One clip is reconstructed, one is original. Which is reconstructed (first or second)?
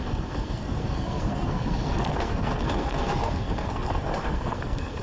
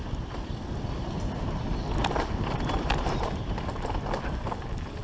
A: first